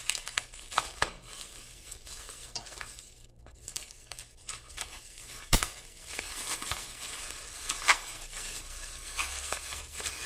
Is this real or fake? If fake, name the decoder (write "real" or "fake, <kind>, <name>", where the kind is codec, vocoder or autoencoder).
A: fake, codec, SNAC